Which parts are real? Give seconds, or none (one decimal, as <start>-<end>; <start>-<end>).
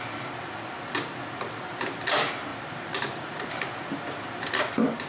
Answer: 0.0-2.5; 3.6-5.1